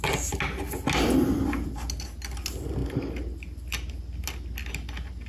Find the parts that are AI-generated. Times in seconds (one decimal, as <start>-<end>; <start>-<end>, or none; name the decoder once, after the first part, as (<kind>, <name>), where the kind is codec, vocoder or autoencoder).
none